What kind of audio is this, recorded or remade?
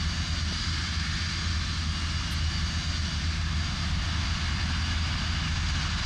recorded